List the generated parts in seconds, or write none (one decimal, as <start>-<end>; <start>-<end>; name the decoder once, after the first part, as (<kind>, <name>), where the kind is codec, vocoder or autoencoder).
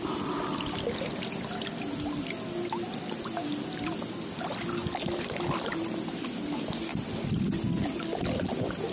none